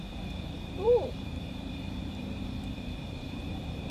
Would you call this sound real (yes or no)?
no